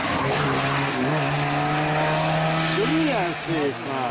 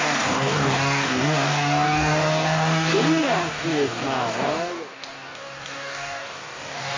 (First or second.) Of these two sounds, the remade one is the second